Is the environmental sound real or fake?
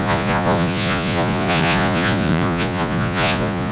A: fake